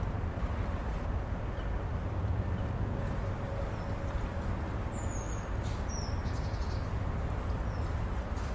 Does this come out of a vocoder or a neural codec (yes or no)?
no